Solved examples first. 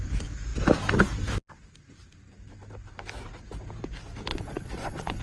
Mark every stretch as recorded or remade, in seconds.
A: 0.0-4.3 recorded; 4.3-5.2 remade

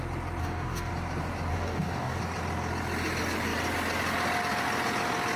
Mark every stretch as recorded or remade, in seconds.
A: 0.0-0.4 recorded; 0.4-0.9 remade; 0.9-1.5 recorded; 1.5-2.2 remade; 2.2-5.4 recorded

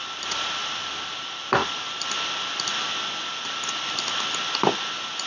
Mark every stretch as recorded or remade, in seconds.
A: 0.0-5.3 recorded

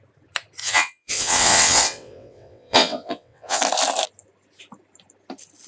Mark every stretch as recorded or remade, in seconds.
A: 0.0-0.6 recorded; 0.6-3.6 remade; 3.6-5.7 recorded

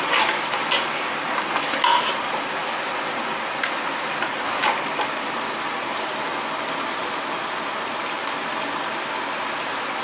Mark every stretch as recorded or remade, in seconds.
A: 0.0-10.0 recorded